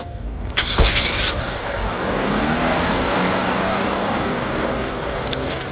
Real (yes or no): no